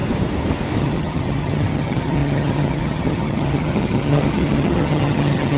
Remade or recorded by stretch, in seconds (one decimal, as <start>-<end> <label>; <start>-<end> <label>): 0.0-0.8 recorded; 0.8-5.6 remade